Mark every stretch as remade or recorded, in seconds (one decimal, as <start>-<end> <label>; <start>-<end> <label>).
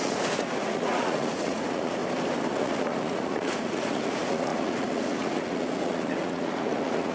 0.0-2.0 remade; 2.0-2.5 recorded; 2.5-7.1 remade